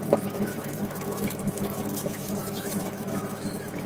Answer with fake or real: fake